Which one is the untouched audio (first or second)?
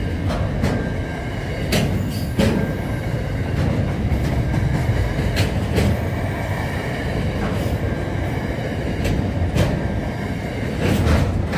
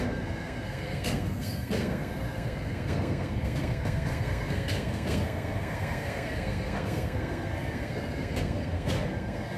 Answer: first